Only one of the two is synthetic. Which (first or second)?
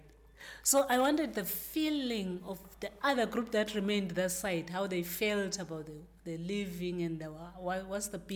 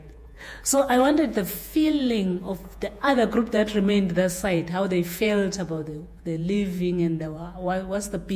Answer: second